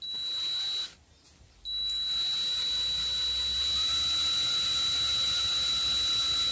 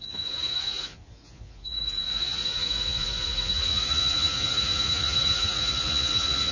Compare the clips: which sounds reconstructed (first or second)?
second